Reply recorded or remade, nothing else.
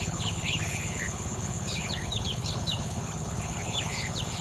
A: remade